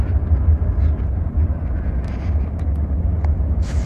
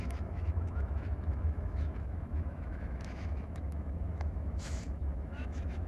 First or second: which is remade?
second